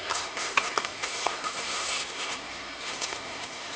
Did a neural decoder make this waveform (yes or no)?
yes